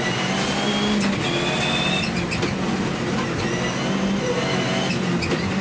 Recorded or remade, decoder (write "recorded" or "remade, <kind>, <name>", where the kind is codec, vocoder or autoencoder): recorded